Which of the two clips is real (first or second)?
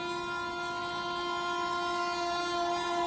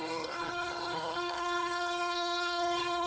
first